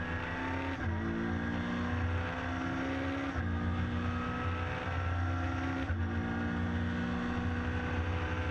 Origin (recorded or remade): recorded